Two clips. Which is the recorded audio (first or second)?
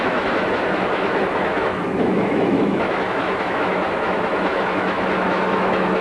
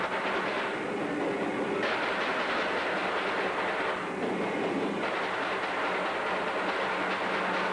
second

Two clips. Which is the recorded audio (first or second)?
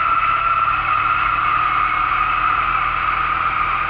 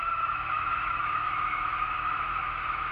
first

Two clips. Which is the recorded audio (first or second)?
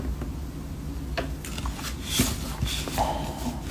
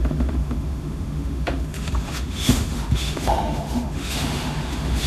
first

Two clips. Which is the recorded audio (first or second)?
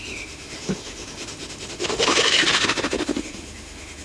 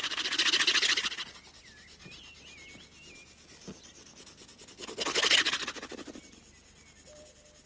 second